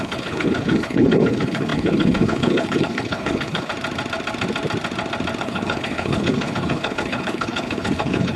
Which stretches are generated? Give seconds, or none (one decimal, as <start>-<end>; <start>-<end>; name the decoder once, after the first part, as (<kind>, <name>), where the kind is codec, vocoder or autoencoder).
0.0-3.7 (codec, HILCodec); 5.4-8.4